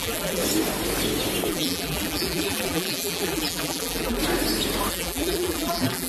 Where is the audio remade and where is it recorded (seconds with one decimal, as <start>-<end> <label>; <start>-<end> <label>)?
0.0-0.4 remade; 0.4-1.5 recorded; 1.5-4.2 remade; 4.2-4.9 recorded; 4.9-6.1 remade